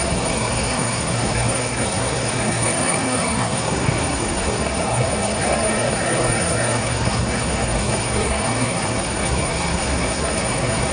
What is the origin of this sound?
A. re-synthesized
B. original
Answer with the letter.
A